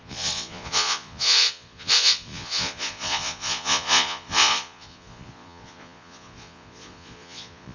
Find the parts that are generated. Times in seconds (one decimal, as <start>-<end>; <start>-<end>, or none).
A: 0.0-7.7